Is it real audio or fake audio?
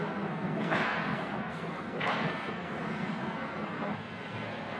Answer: fake